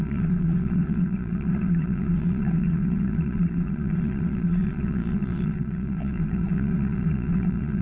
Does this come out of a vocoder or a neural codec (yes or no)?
yes